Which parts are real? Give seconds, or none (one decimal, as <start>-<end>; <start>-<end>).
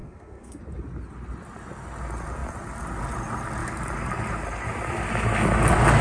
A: 0.6-6.0